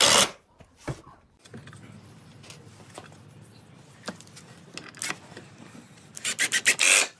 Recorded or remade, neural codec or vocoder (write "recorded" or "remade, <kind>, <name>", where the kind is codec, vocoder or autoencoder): recorded